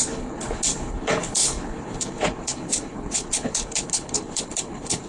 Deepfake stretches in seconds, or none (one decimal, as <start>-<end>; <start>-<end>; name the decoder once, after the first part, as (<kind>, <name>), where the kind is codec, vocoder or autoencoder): 0.0-5.1 (codec, HILCodec)